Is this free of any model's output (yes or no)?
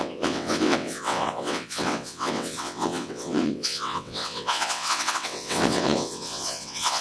no